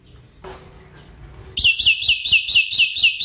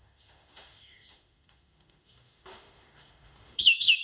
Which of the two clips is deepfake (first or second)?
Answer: second